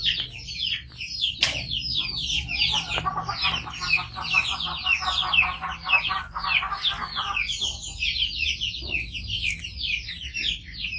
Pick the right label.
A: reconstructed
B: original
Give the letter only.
B